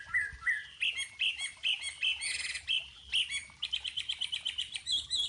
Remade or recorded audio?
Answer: recorded